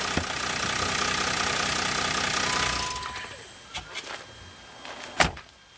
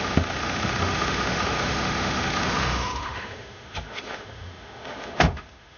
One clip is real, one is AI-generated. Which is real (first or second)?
first